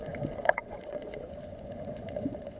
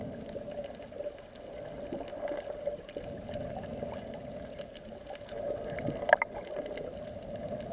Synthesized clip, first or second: first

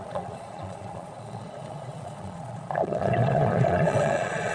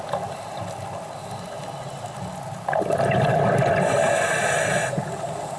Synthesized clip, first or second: first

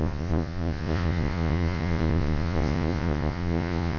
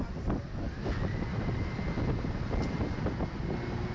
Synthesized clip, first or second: first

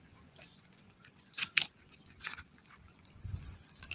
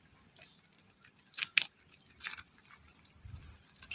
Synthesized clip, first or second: first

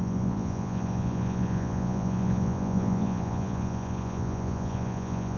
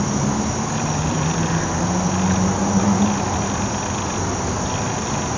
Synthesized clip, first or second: first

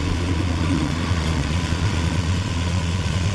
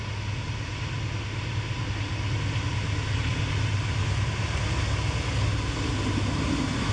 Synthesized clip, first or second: first